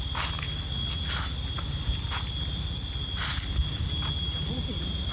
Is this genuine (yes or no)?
yes